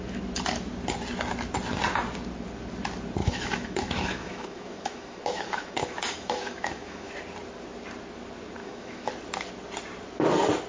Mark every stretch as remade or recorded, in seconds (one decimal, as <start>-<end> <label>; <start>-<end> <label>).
0.0-3.2 recorded; 3.2-7.1 remade; 7.1-8.6 recorded; 8.6-9.1 remade; 9.1-10.7 recorded